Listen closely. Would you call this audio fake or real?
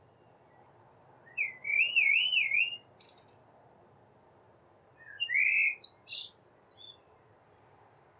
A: real